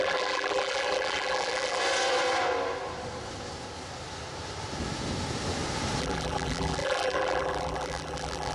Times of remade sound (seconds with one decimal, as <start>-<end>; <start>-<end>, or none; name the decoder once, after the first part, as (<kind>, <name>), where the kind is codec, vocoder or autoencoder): 0.0-1.8 (vocoder, BigVGAN v2); 6.0-8.5